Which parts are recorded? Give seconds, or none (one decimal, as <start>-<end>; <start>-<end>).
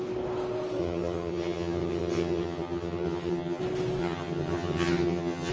0.0-0.8; 3.6-4.0